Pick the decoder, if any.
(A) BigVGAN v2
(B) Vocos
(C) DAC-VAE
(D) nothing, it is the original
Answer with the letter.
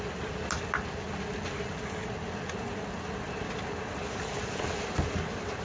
D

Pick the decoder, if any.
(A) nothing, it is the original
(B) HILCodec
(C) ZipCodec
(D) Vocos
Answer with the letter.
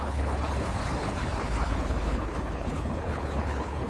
B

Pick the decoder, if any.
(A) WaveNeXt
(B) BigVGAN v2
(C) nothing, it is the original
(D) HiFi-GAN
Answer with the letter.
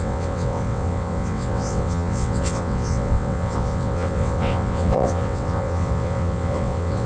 A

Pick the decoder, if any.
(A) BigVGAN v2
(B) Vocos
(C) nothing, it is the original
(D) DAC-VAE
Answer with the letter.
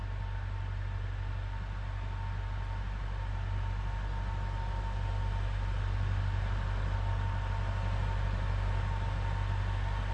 C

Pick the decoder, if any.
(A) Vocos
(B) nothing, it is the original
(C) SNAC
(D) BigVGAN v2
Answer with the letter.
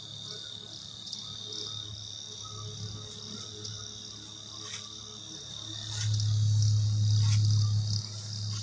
B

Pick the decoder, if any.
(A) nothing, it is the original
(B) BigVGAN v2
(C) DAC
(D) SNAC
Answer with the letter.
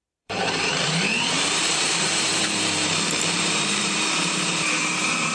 B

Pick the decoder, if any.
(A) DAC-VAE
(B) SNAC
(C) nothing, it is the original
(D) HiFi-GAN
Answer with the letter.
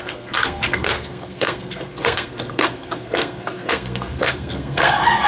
B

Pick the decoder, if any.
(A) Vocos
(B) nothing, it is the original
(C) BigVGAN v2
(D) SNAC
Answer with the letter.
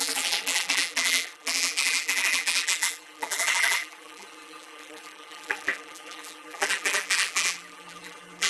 C